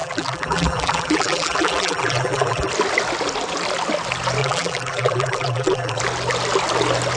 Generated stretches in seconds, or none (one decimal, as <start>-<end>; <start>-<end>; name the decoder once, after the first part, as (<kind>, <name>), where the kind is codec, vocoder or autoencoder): 0.0-2.7 (vocoder, BigVGAN v2); 4.4-6.0